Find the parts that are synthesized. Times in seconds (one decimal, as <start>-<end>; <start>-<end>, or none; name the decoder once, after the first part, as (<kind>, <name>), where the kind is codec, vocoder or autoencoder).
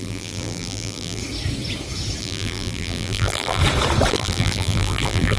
0.0-1.2 (vocoder, BigVGAN v2); 2.2-3.6; 4.1-5.4